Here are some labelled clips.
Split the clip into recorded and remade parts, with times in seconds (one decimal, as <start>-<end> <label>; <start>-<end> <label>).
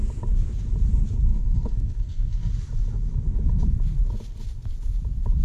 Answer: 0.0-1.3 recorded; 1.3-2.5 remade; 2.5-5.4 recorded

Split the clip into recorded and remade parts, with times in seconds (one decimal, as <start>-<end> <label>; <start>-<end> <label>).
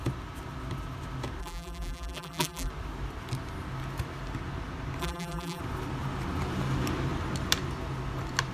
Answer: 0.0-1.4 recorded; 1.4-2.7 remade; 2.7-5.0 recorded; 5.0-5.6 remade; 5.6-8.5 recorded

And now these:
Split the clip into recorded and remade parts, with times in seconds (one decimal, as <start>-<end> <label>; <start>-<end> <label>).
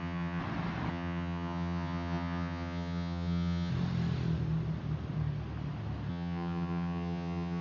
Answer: 0.0-0.4 remade; 0.4-0.9 recorded; 0.9-3.7 remade; 3.7-6.1 recorded; 6.1-7.6 remade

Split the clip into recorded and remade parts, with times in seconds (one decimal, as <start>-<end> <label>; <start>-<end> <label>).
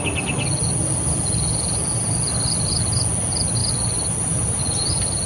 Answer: 0.0-3.6 recorded; 3.6-5.3 remade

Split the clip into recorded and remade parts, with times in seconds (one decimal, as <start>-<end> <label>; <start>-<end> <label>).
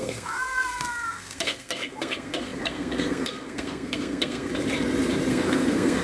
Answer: 0.0-4.5 remade; 4.5-5.3 recorded; 5.3-6.0 remade